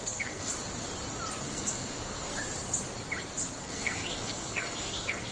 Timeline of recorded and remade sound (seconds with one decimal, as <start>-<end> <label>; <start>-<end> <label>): 0.0-0.5 remade; 0.5-1.4 recorded; 1.4-2.4 remade; 2.4-3.6 recorded; 3.6-5.3 remade